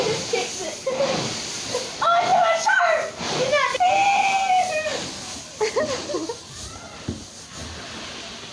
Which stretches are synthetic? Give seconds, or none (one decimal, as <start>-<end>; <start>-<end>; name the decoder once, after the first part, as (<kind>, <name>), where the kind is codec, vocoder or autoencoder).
none